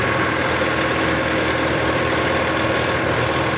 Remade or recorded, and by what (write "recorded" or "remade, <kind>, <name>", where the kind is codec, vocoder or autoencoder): recorded